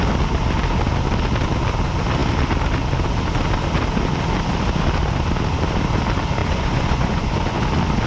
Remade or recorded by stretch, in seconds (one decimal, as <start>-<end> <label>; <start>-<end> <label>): 0.0-6.4 recorded; 6.4-7.6 remade; 7.6-8.1 recorded